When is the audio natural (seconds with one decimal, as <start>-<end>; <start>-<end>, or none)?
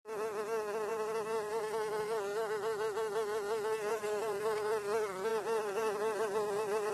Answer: 0.0-0.9; 1.6-3.9; 4.7-5.3